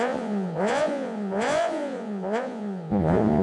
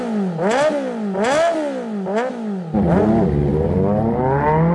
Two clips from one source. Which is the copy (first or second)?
first